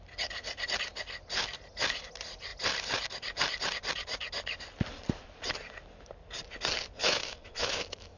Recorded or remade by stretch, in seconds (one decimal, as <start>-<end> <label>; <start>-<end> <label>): 0.0-7.0 recorded; 7.0-8.2 remade